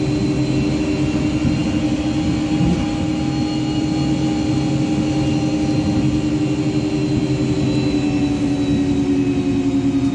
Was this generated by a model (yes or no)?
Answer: no